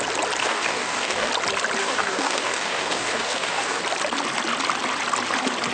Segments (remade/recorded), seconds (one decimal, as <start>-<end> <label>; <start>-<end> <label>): 0.0-0.4 recorded; 0.4-1.3 remade; 1.3-1.8 recorded; 1.8-3.8 remade; 3.8-5.7 recorded